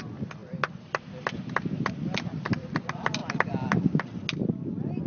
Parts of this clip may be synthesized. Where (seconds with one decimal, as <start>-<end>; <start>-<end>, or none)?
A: none